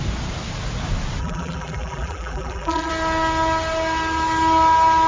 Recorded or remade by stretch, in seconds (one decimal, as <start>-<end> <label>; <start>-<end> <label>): 0.0-1.2 recorded; 1.2-2.9 remade; 2.9-5.1 recorded